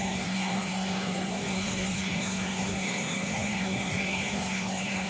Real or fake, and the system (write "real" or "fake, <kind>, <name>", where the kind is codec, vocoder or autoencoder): fake, codec, SNAC